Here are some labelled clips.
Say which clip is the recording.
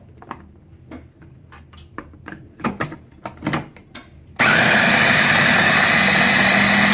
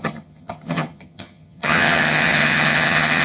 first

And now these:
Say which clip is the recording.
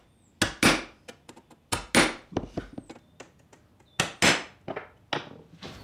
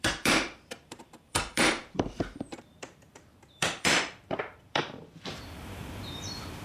first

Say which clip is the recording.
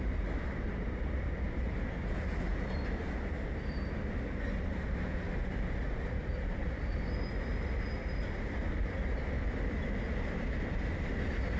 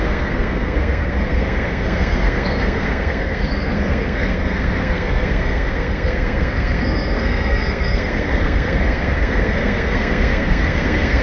first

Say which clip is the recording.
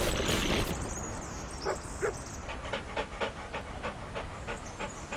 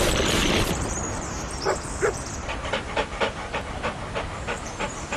first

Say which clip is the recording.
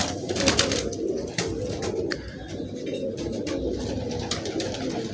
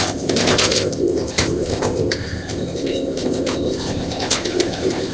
first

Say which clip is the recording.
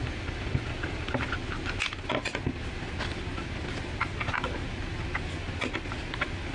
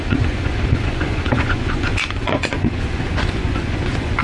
first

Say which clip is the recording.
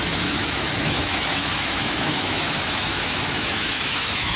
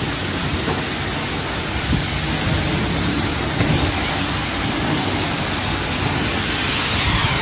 second